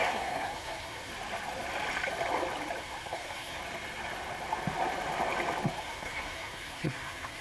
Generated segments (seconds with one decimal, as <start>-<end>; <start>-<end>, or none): 0.0-1.1; 2.8-3.6; 5.8-7.4